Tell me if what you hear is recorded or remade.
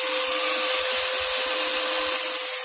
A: recorded